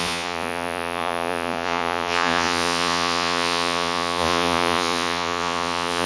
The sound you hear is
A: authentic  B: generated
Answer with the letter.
B